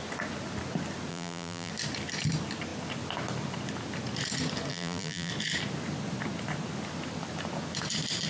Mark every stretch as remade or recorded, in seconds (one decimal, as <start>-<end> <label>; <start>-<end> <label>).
0.0-1.1 recorded; 1.1-1.7 remade; 1.7-4.7 recorded; 4.7-5.3 remade; 5.3-8.3 recorded

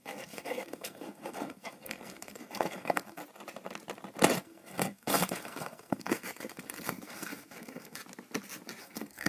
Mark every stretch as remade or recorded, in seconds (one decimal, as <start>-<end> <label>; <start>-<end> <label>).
0.0-3.2 remade; 3.2-4.4 recorded; 4.4-8.0 remade; 8.0-8.8 recorded; 8.8-9.3 remade

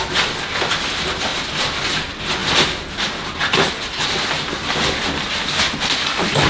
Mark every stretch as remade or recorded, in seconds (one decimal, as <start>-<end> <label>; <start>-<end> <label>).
0.0-6.5 recorded

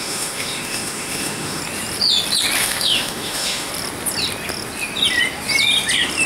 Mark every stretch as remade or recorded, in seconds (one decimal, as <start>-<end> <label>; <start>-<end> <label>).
0.0-1.6 remade; 1.6-2.6 recorded; 2.6-3.7 remade; 3.7-6.3 recorded

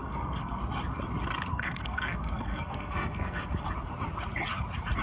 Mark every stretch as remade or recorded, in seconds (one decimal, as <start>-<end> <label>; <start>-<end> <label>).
0.0-0.6 remade; 0.6-1.5 recorded; 1.5-3.5 remade; 3.5-5.0 recorded

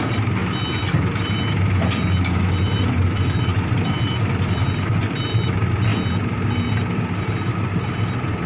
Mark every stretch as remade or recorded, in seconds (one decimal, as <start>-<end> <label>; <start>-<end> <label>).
0.0-0.4 remade; 0.4-2.8 recorded; 2.8-5.9 remade; 5.9-6.7 recorded; 6.7-8.5 remade